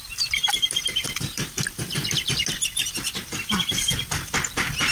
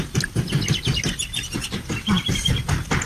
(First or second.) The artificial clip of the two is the first